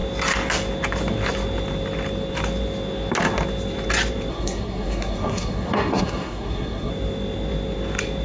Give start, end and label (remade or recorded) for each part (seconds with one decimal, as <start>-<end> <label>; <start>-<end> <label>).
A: 0.0-4.3 recorded; 4.3-6.9 remade; 6.9-8.2 recorded